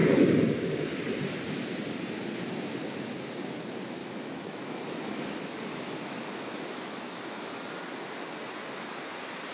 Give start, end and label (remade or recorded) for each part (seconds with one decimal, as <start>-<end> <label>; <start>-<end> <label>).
0.0-0.8 remade; 0.8-4.0 recorded; 4.0-7.4 remade; 7.4-9.5 recorded